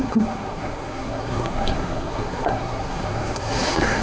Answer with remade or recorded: remade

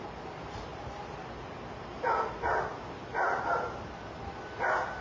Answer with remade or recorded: recorded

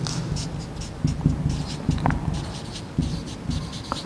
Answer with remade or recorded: recorded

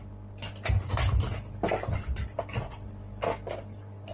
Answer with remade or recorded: recorded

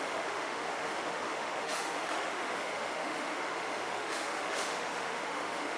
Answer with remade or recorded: remade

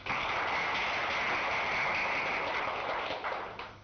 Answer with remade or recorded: recorded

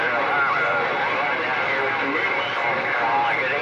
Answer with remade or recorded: recorded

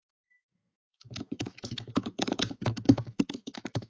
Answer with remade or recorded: remade